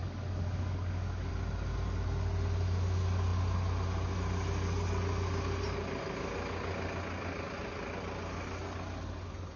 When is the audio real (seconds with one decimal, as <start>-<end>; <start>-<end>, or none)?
1.3-9.6